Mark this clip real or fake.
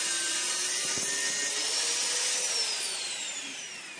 real